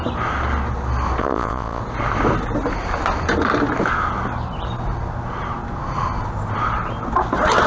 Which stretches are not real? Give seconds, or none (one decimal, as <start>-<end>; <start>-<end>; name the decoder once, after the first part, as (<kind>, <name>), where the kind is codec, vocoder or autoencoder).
1.2-1.8 (vocoder, Vocos)